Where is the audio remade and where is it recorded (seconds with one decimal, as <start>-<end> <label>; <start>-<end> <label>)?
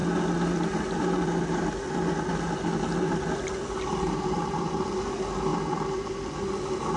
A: 0.0-7.0 recorded